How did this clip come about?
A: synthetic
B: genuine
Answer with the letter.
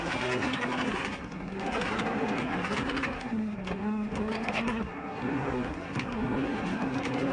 A